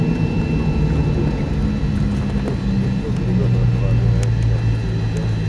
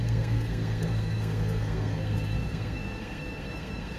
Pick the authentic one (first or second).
first